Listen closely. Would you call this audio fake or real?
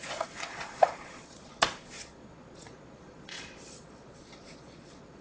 fake